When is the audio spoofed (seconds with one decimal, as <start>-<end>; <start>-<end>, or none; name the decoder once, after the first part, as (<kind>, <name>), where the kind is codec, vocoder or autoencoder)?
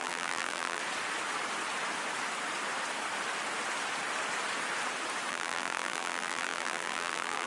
0.0-0.8 (vocoder, BigVGAN v2); 5.3-7.5